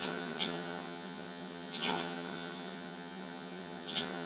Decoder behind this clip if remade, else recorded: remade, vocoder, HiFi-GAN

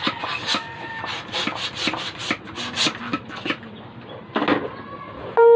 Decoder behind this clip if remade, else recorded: recorded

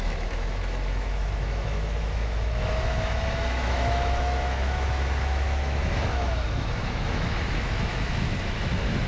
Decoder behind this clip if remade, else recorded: remade, autoencoder, DAC-VAE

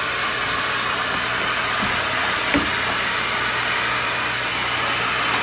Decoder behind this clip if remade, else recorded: recorded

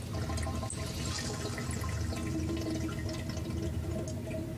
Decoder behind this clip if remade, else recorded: recorded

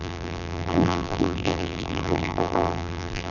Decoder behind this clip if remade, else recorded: remade, vocoder, BigVGAN v2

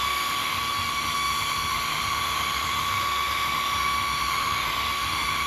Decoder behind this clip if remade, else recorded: remade, autoencoder, DAC-VAE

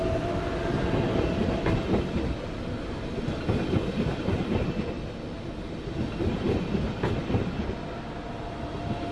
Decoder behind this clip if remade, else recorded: recorded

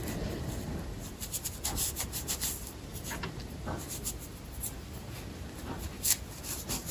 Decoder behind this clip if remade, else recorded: recorded